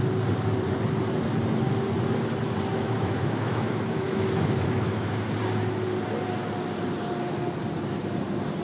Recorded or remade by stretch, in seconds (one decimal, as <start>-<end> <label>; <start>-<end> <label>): 0.0-2.7 recorded; 2.7-5.1 remade; 5.1-8.6 recorded